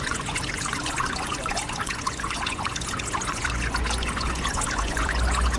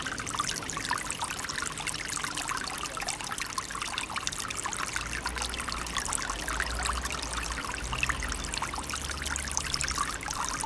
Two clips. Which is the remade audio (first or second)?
first